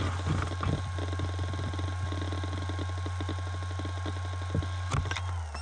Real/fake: real